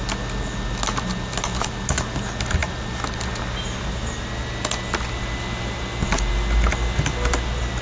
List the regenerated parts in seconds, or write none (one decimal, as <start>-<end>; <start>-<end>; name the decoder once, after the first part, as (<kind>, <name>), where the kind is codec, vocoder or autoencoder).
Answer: none